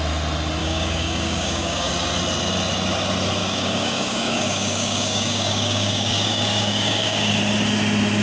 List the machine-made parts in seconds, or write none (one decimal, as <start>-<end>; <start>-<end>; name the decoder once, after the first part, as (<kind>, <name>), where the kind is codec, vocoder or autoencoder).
0.6-1.9 (codec, DAC); 3.4-7.3